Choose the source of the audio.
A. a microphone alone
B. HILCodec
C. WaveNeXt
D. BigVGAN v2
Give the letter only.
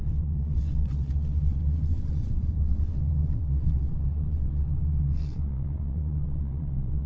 C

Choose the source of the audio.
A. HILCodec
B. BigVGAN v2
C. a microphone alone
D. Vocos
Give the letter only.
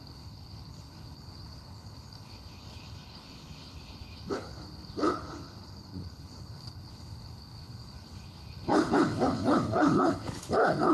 A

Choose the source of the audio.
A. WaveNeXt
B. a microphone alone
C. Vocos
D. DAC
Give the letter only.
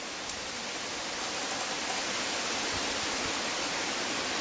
B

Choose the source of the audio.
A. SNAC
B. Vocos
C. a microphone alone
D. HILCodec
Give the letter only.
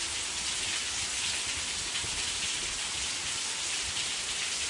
C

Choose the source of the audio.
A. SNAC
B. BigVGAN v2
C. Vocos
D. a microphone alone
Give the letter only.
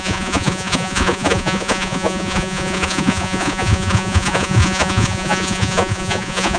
C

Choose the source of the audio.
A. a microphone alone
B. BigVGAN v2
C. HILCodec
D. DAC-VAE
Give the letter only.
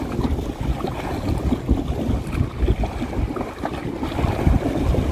A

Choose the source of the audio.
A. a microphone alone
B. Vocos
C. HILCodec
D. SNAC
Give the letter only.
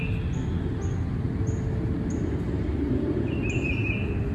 A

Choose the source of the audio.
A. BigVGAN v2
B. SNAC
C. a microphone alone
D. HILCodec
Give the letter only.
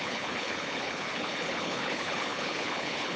D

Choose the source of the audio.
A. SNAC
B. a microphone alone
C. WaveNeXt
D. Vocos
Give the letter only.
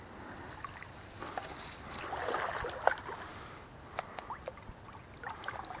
B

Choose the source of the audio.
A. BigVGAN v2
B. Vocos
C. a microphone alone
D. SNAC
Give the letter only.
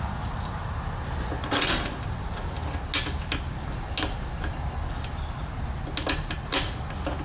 C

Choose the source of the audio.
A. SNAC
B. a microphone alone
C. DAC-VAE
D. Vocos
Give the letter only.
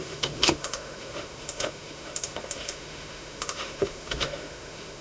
C